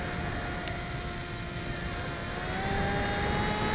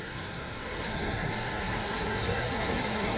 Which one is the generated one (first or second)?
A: second